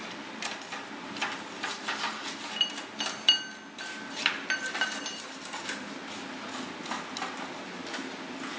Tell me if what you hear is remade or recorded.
recorded